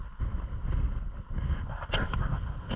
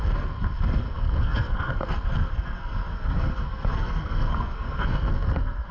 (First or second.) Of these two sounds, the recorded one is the first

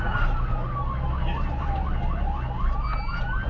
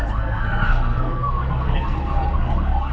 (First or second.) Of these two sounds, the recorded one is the first